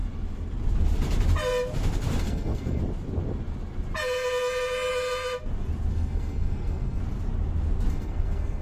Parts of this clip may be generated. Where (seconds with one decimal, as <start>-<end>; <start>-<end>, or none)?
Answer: 2.2-2.8; 5.9-7.0; 7.9-8.6